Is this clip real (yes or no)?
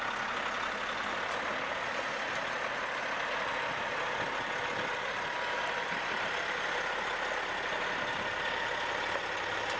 yes